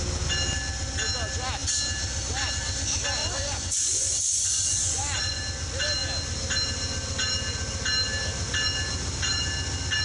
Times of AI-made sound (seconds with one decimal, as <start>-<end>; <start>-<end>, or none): 3.2-5.4